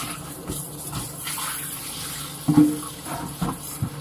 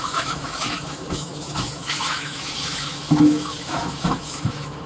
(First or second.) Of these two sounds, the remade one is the second